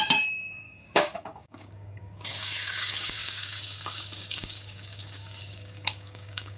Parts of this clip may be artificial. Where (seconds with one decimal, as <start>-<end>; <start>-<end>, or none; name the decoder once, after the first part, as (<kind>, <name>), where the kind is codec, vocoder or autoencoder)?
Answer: 0.0-6.6 (codec, DAC)